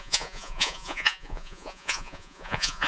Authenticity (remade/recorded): remade